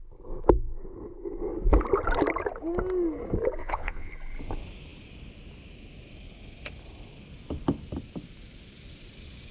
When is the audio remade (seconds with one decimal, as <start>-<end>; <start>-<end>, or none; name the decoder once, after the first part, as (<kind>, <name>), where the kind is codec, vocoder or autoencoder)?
3.6-4.1 (vocoder, WaveNeXt)